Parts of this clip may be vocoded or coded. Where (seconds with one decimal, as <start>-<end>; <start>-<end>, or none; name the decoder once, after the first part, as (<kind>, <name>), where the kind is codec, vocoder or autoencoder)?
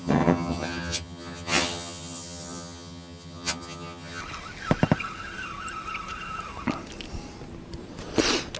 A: 0.0-4.2 (vocoder, HiFi-GAN)